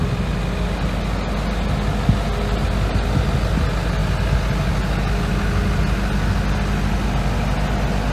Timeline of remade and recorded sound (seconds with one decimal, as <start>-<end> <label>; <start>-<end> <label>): 0.0-8.1 recorded